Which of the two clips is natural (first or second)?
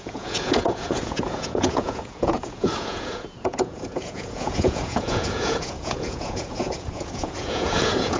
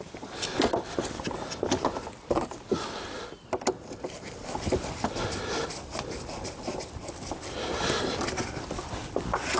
second